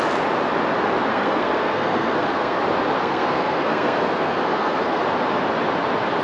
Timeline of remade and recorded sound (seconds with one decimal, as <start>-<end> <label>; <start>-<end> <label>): 0.0-1.1 recorded; 1.1-2.6 remade; 2.6-3.0 recorded; 3.0-5.0 remade; 5.0-6.2 recorded